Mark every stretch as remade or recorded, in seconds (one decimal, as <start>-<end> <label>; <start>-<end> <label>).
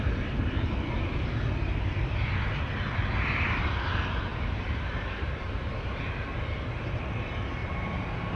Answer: 0.0-4.3 recorded; 4.3-6.4 remade; 6.4-7.6 recorded; 7.6-8.4 remade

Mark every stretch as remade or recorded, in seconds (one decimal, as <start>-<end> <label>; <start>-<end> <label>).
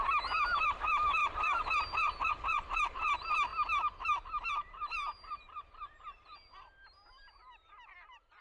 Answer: 0.0-3.5 remade; 3.5-4.5 recorded; 4.5-8.4 remade